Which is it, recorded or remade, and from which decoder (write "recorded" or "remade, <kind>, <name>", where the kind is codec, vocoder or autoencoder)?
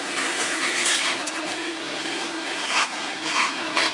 remade, codec, SNAC